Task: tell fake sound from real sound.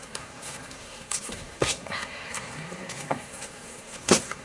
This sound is fake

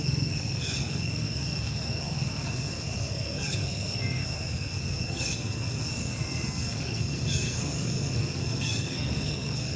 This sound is fake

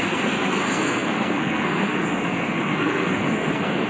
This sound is fake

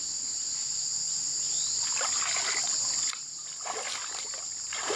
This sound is real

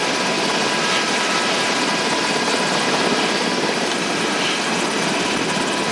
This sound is real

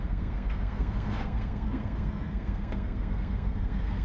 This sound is fake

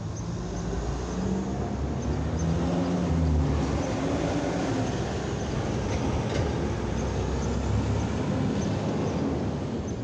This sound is real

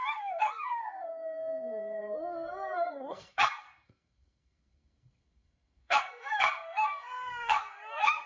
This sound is fake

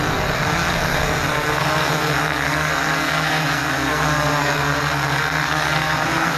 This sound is fake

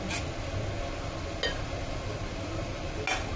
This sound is real